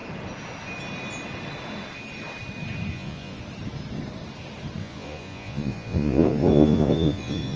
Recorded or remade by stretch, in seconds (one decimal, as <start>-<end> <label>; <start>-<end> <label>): 0.0-2.9 recorded; 2.9-3.4 remade; 3.4-4.8 recorded; 4.8-7.6 remade